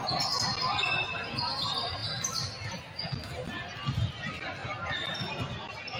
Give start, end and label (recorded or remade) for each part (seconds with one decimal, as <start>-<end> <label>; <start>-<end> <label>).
0.0-6.0 recorded